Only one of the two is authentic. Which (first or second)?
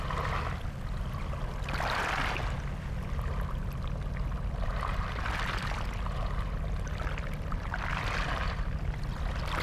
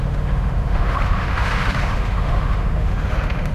first